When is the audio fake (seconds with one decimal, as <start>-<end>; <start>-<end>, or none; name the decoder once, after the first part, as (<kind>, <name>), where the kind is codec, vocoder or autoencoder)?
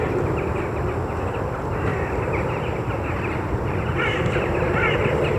1.9-5.4 (vocoder, BigVGAN v2)